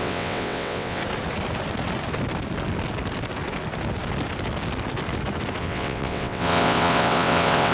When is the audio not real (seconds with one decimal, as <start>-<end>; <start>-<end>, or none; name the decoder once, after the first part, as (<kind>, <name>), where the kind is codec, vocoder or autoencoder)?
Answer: 0.0-1.0 (vocoder, WaveNeXt); 5.6-7.7